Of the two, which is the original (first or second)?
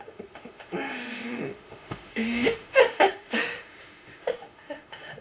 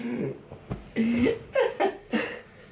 second